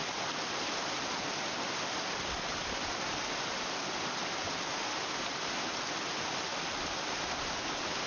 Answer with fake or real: real